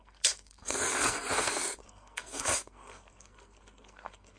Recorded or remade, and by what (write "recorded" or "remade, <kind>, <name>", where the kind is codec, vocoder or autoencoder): remade, codec, SNAC